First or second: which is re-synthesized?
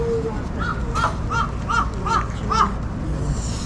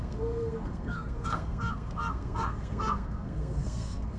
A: second